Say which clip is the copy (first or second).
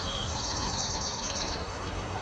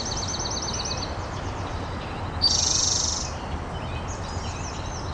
first